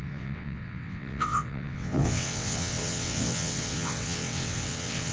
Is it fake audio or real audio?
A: fake